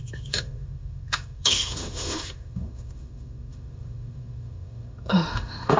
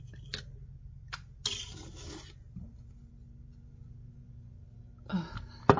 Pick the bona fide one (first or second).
second